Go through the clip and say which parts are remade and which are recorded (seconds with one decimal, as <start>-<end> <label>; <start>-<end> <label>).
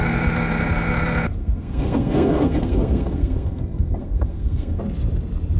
0.0-1.4 recorded; 1.4-4.8 remade; 4.8-5.6 recorded